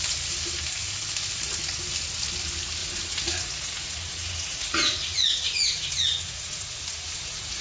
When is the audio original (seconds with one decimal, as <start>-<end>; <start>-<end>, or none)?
0.0-2.8